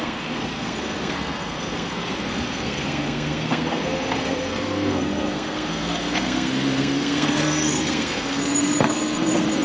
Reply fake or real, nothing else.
fake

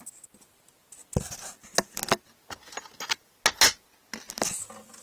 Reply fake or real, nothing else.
real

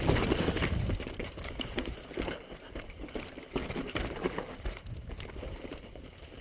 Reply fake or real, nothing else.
fake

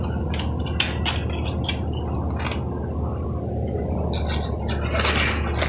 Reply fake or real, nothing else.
real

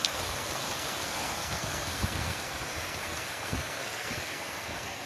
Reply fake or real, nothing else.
fake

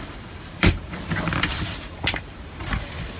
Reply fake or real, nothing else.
fake